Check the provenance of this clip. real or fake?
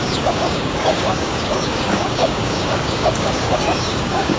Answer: fake